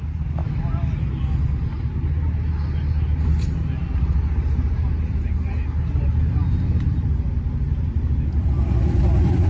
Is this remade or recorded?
recorded